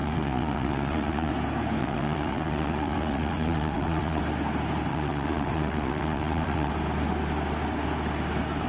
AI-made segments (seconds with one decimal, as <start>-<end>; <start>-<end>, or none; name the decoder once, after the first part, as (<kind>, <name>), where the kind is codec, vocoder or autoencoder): 0.0-1.3 (vocoder, WaveNeXt); 1.8-4.2; 4.9-6.7